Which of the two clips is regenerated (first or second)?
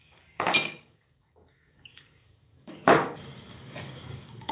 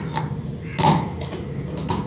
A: first